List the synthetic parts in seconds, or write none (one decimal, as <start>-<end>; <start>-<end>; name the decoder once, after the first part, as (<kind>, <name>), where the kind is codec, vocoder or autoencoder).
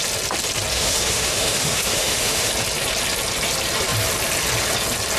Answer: 0.7-2.5 (autoencoder, DAC-VAE)